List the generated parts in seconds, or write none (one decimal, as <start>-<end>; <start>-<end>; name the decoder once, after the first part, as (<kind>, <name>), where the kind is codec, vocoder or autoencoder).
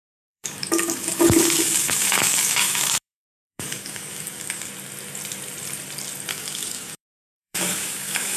0.0-4.7 (codec, DAC); 6.3-8.4